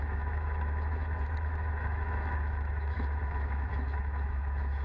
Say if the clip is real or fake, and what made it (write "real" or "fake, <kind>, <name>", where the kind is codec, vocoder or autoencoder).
fake, autoencoder, DAC-VAE